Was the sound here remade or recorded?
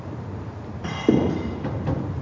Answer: recorded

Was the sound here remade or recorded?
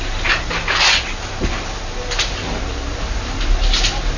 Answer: recorded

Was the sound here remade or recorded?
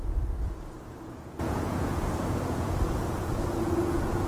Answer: remade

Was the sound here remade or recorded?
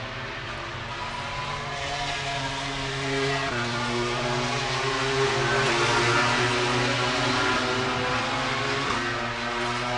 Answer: recorded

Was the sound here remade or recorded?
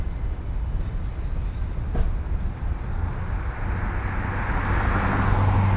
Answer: recorded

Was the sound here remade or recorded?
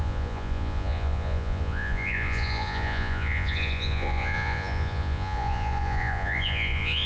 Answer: remade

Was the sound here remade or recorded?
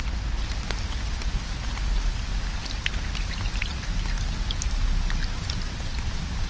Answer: recorded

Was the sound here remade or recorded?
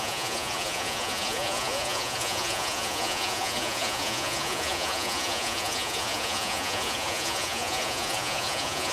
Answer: remade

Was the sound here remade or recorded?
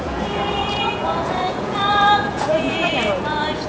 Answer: remade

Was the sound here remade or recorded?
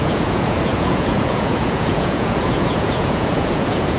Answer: remade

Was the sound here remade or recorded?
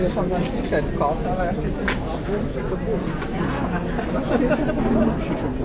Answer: recorded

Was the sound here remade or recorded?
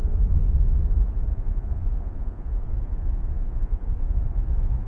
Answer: remade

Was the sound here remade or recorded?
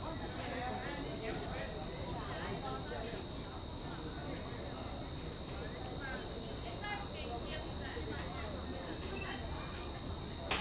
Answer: recorded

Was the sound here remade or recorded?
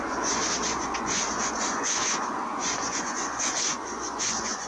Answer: remade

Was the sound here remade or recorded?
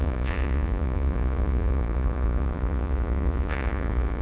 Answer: remade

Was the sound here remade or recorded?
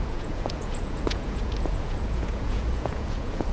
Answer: remade